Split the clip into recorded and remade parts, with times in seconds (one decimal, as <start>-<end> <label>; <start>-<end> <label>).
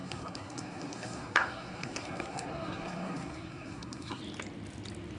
0.0-4.2 remade; 4.2-5.2 recorded